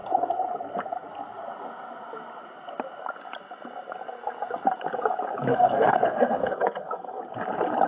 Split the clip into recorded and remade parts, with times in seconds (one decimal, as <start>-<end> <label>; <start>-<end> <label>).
0.0-5.5 recorded; 5.5-7.2 remade; 7.2-7.9 recorded